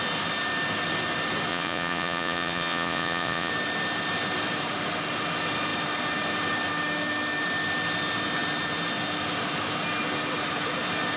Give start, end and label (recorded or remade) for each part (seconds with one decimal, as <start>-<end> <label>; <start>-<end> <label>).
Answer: 0.0-1.5 recorded; 1.5-3.5 remade; 3.5-11.2 recorded